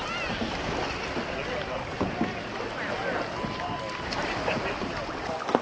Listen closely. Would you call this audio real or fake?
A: real